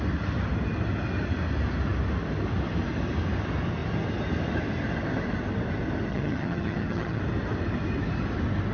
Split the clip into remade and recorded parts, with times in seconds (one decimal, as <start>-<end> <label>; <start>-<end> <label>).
0.0-6.1 recorded; 6.1-7.2 remade; 7.2-8.7 recorded